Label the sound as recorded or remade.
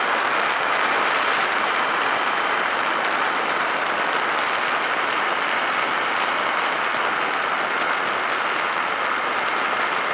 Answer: recorded